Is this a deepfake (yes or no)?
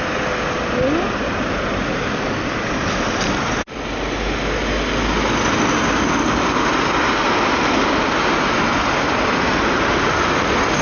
no